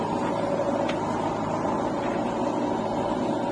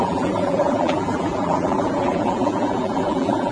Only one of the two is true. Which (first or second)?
first